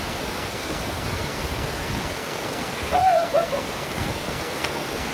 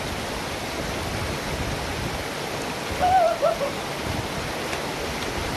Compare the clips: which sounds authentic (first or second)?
second